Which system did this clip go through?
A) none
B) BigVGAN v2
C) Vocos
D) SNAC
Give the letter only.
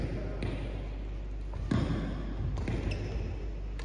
A